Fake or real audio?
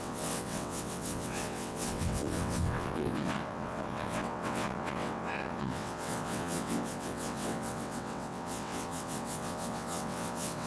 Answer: fake